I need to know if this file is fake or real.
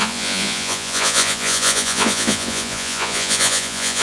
fake